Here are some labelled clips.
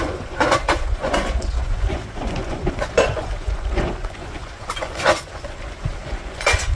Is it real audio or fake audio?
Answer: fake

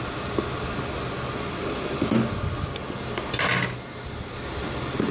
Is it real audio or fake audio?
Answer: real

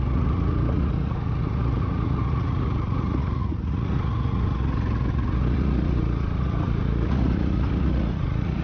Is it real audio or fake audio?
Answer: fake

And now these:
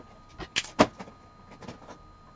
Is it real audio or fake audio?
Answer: real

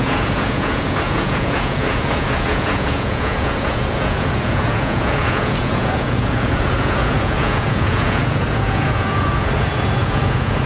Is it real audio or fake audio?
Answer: fake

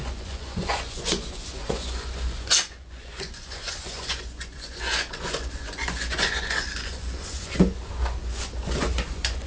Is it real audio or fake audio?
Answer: fake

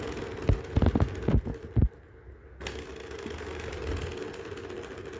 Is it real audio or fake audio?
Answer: real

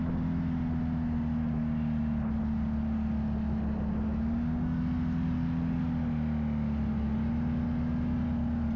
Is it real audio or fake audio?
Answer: real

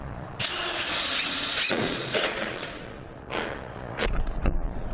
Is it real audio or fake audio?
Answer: fake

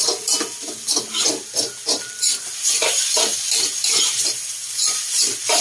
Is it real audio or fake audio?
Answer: real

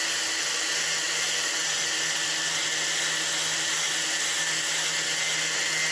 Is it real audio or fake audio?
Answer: real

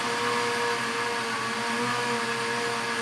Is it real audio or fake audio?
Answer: real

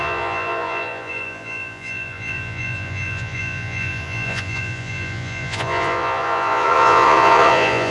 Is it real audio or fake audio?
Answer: fake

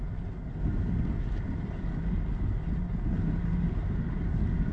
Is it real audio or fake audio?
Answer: real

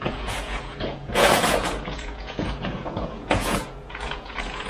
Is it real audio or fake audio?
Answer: fake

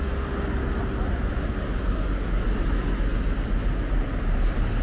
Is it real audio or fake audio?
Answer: real